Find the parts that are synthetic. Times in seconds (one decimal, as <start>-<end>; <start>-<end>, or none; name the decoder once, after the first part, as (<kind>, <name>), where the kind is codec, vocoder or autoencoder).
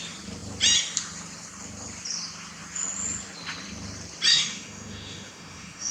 4.3-5.9 (autoencoder, DAC-VAE)